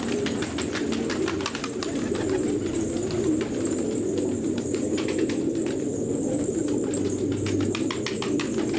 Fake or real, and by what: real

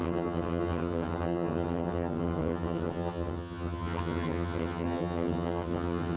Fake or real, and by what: fake, vocoder, HiFi-GAN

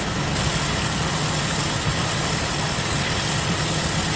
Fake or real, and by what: real